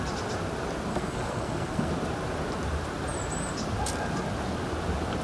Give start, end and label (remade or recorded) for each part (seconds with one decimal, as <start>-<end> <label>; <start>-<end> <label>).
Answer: 0.0-0.9 recorded; 0.9-1.9 remade; 1.9-5.2 recorded